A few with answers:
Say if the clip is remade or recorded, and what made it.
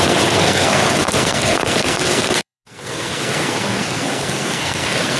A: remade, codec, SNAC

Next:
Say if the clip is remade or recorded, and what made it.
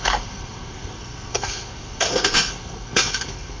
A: remade, codec, SNAC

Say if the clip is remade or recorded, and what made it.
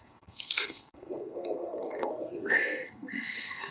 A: remade, codec, SNAC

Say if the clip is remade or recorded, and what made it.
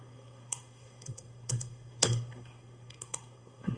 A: remade, codec, SNAC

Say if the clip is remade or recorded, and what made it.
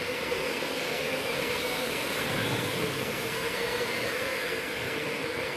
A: remade, codec, SNAC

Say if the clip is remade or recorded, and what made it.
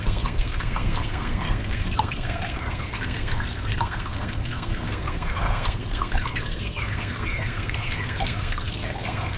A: remade, codec, SNAC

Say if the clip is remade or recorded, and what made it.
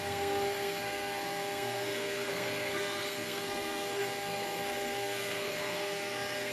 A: remade, codec, SNAC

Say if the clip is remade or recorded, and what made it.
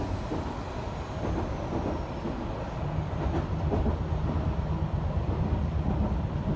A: recorded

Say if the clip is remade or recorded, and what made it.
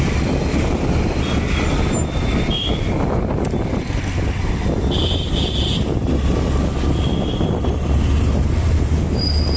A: recorded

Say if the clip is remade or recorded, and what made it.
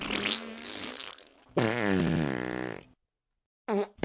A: recorded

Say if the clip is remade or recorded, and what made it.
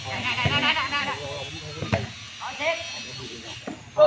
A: recorded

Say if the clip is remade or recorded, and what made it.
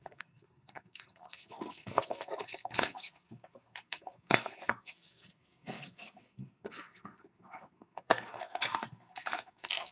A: remade, codec, SNAC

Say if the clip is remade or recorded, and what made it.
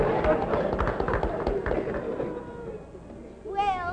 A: recorded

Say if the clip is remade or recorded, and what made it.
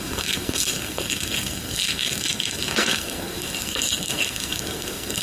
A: remade, codec, SNAC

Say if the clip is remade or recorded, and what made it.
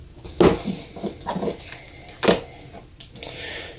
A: recorded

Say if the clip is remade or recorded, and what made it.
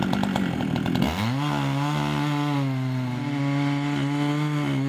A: recorded